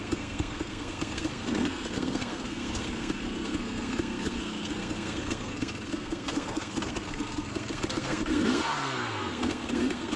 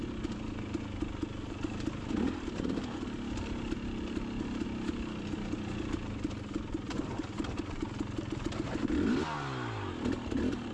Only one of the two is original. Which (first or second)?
second